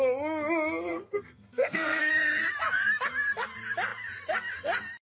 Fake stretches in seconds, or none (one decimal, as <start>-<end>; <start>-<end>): 0.9-2.1